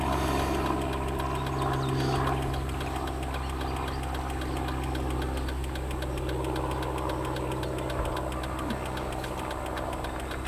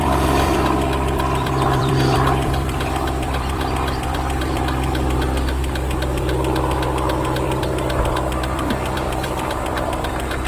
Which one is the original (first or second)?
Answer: first